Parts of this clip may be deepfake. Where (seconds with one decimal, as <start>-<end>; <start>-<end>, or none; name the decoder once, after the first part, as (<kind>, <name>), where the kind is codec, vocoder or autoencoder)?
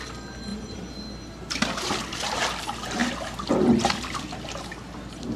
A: 0.0-5.4 (vocoder, BigVGAN v2)